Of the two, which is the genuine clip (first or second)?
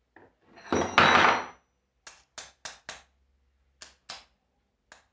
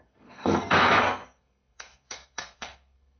first